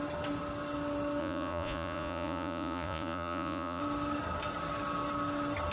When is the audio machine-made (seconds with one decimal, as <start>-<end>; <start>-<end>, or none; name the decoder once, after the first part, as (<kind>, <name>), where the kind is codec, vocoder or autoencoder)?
1.2-3.8 (vocoder, Vocos)